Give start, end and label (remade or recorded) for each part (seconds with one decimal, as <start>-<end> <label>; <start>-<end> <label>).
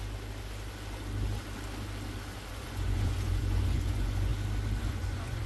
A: 0.0-2.5 recorded; 2.5-4.3 remade; 4.3-4.8 recorded; 4.8-5.5 remade